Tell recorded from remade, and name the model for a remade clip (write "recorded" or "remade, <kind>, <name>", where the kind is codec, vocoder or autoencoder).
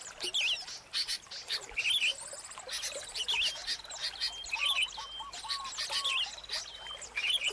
recorded